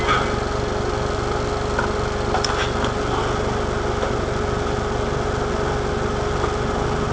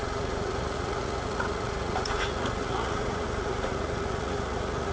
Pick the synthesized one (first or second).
second